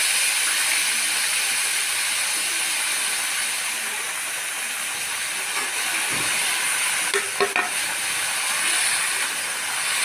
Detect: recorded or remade recorded